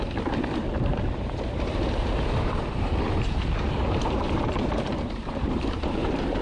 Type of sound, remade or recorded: remade